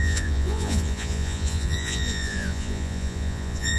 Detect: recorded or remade remade